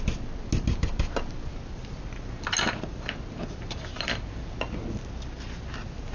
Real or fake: real